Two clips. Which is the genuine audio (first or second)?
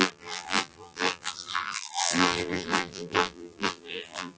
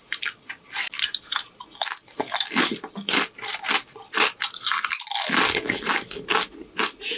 second